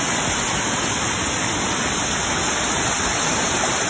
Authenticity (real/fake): real